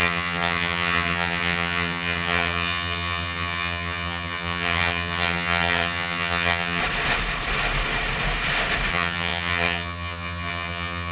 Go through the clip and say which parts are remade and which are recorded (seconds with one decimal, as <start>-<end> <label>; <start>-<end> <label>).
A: 0.0-6.8 remade; 6.8-8.9 recorded; 8.9-11.1 remade